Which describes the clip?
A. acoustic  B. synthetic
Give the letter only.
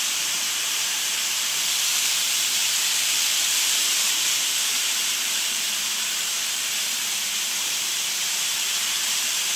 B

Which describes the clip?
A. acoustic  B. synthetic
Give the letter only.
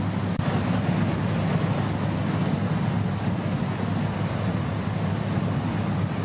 A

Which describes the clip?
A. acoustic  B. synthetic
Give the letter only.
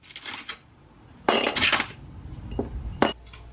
A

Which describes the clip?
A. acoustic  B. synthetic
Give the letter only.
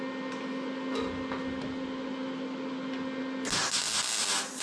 A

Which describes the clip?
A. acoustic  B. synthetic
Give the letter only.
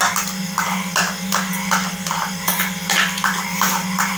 A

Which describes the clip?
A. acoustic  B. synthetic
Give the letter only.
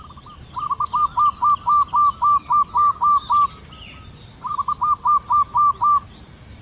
A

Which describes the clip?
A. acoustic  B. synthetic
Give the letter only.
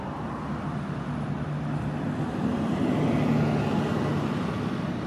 A